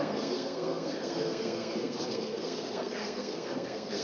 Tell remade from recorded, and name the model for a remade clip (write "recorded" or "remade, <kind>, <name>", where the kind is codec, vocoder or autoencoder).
remade, codec, SNAC